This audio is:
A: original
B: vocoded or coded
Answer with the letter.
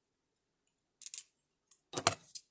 A